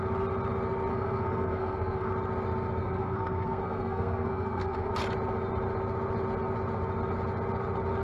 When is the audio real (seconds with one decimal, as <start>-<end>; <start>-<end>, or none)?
0.0-0.9; 2.1-2.8; 4.9-8.0